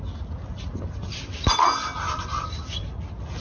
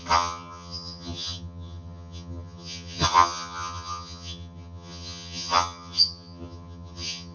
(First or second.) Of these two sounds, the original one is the first